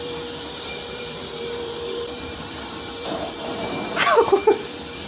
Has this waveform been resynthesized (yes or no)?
yes